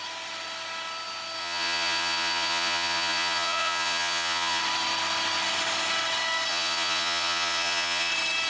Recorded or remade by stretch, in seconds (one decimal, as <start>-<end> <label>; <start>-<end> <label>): 0.0-1.4 recorded; 1.4-4.6 remade; 4.6-6.5 recorded; 6.5-8.1 remade; 8.1-8.5 recorded